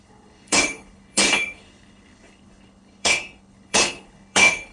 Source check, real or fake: fake